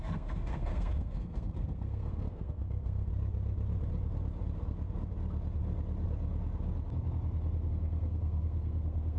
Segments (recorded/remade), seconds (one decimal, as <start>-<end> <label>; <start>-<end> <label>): 0.0-3.1 remade; 3.1-7.7 recorded; 7.7-9.2 remade